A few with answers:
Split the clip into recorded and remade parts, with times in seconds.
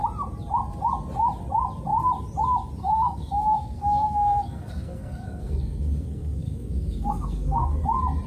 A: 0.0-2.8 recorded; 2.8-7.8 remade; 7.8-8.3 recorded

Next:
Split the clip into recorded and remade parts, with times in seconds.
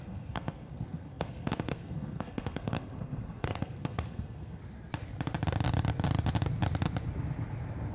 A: 0.0-4.6 remade; 4.6-7.9 recorded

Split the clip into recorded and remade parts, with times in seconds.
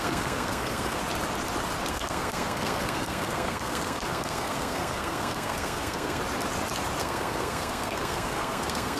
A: 0.0-1.0 remade; 1.0-1.9 recorded; 1.9-6.2 remade; 6.2-7.0 recorded; 7.0-9.0 remade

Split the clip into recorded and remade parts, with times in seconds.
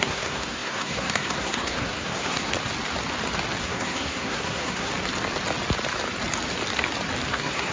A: 0.0-2.5 remade; 2.5-3.6 recorded; 3.6-4.9 remade; 4.9-7.3 recorded; 7.3-7.7 remade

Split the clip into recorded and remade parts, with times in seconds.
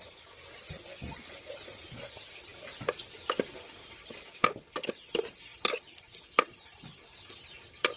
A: 0.0-8.0 recorded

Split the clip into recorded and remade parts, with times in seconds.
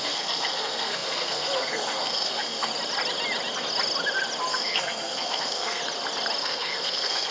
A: 0.0-2.7 remade; 2.7-4.5 recorded; 4.5-5.8 remade; 5.8-6.4 recorded; 6.4-7.3 remade